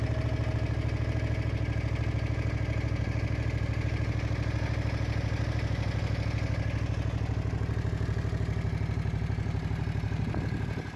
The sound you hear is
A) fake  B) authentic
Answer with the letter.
B